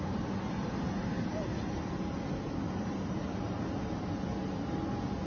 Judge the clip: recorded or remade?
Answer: recorded